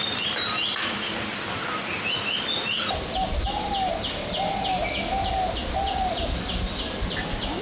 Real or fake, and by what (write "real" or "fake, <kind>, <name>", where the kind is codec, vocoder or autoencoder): real